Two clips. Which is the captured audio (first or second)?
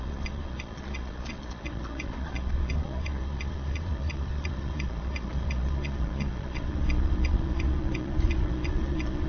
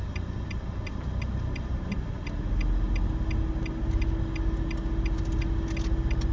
second